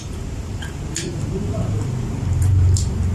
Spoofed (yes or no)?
no